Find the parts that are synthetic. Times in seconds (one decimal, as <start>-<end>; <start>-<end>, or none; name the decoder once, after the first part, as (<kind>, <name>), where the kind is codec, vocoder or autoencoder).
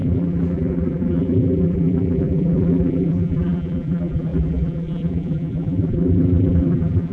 0.0-7.1 (vocoder, BigVGAN v2)